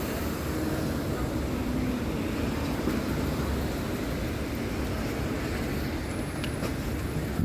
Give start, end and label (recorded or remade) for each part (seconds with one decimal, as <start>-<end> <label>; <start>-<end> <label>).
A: 0.0-7.4 recorded